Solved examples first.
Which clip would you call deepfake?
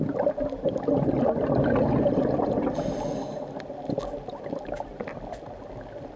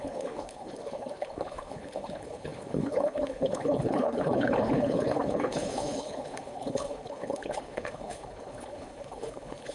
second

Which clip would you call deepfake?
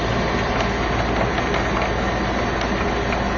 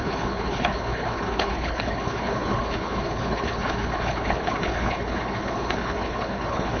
second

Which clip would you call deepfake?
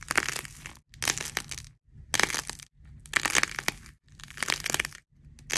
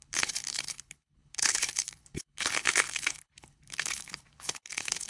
second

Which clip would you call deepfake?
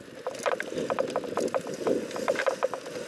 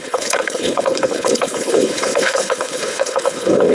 second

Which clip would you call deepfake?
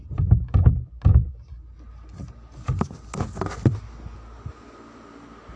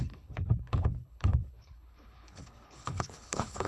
second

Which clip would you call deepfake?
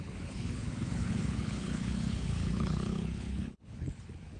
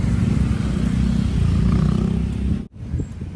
first